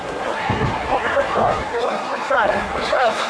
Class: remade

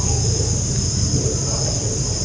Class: remade